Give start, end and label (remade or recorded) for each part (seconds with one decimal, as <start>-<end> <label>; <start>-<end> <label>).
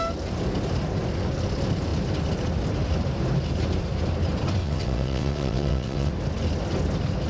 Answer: 0.0-4.6 recorded; 4.6-6.1 remade; 6.1-7.3 recorded